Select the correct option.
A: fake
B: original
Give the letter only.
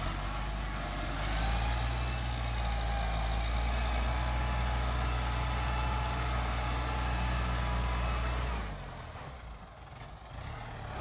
B